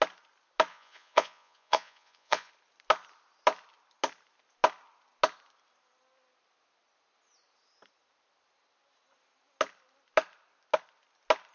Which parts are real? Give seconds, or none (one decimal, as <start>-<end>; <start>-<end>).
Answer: 0.0-0.7; 2.5-11.5